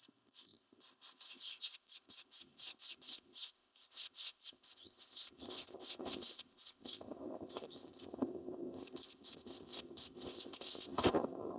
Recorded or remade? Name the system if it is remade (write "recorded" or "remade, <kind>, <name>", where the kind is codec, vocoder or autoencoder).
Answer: remade, codec, ZipCodec